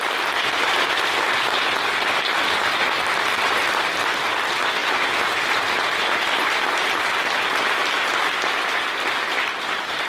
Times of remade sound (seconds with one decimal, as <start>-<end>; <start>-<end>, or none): 0.4-3.7